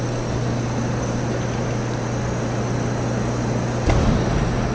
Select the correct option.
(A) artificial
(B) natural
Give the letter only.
B